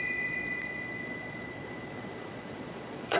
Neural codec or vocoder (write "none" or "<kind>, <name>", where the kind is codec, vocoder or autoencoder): vocoder, Vocos